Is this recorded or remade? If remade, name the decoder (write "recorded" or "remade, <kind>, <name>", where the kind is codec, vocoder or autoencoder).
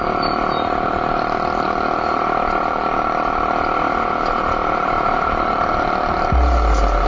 recorded